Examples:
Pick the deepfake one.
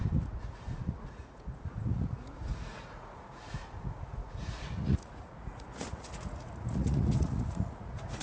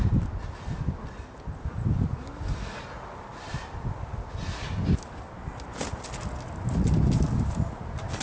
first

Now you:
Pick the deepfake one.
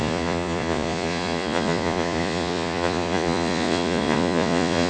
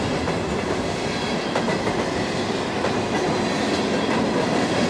first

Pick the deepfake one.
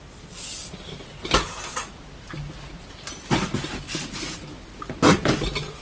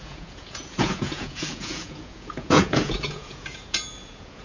second